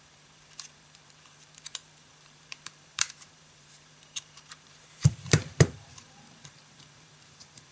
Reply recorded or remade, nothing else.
remade